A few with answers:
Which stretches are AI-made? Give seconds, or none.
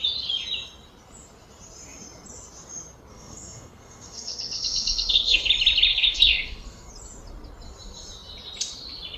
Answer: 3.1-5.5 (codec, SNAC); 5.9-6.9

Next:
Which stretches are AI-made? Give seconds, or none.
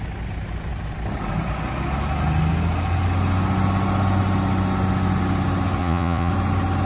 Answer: 5.8-6.3 (vocoder, Vocos)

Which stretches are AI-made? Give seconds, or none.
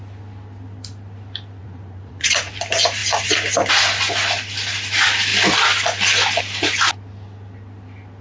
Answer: 1.6-2.5 (vocoder, Vocos)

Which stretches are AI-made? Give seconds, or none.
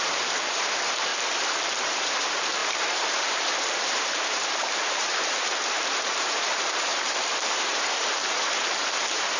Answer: 0.0-1.1 (vocoder, BigVGAN v2); 1.8-9.4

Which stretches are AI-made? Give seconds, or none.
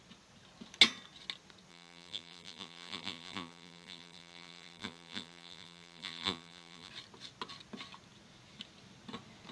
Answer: 1.7-6.9 (vocoder, BigVGAN v2)